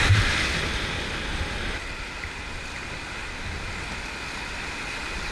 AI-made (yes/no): no